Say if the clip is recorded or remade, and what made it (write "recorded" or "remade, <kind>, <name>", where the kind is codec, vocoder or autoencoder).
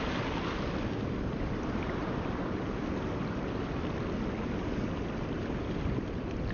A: recorded